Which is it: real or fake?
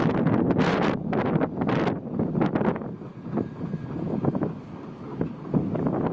real